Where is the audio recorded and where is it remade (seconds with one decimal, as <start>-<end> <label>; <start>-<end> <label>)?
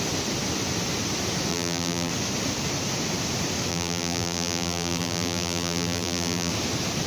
0.0-1.5 recorded; 1.5-2.1 remade; 2.1-3.7 recorded; 3.7-6.5 remade; 6.5-7.1 recorded